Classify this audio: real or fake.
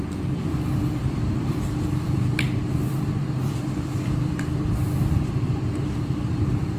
fake